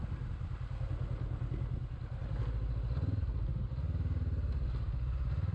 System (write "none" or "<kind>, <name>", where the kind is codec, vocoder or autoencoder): none